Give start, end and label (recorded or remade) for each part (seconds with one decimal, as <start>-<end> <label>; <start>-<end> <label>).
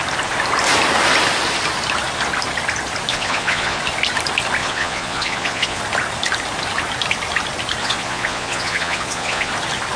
0.0-3.1 recorded; 3.1-3.8 remade; 3.8-4.6 recorded; 4.6-5.8 remade; 5.8-7.8 recorded; 7.8-9.5 remade; 9.5-10.0 recorded